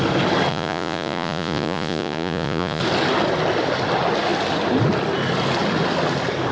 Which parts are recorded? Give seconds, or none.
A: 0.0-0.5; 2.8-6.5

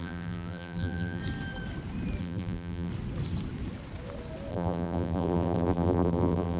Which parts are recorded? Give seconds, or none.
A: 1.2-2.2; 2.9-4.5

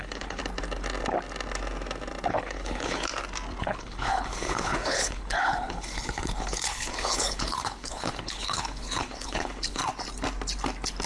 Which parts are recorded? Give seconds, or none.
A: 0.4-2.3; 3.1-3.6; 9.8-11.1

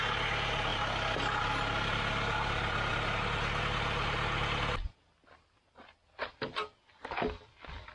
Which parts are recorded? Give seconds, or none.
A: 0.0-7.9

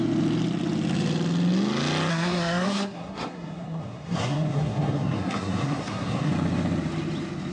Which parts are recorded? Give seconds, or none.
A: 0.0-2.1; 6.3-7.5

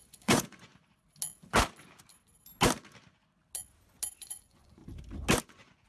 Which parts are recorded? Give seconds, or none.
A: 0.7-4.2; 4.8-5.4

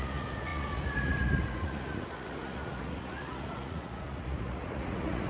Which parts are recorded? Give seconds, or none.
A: none

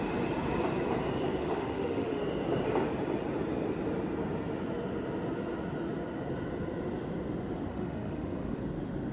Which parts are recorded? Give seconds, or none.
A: 0.0-1.4; 2.2-7.7; 8.6-9.1